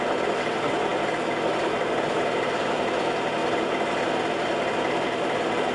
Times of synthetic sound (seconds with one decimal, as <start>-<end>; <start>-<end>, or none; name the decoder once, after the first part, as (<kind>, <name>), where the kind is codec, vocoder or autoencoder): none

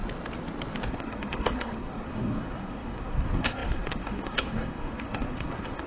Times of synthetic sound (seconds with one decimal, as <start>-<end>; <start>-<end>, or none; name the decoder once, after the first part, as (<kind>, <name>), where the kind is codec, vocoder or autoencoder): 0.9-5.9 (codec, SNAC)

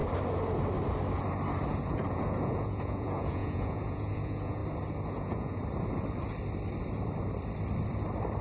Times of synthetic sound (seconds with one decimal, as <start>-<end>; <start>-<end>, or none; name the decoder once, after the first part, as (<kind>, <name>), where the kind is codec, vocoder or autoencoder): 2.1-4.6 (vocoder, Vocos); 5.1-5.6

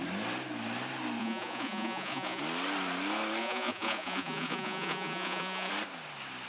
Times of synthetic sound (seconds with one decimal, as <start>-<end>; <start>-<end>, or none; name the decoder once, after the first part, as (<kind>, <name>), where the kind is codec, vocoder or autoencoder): 1.2-2.4 (vocoder, Vocos); 3.4-5.7

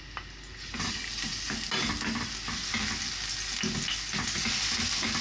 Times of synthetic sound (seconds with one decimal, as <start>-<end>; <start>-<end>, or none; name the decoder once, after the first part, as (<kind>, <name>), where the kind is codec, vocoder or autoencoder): none

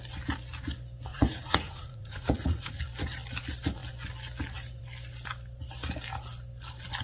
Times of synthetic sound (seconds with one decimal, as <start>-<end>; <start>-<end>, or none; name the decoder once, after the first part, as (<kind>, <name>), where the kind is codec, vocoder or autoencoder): 1.1-2.8 (vocoder, Vocos)